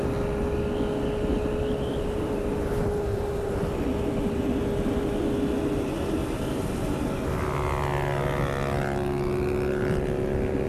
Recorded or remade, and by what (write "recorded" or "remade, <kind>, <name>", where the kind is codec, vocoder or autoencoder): recorded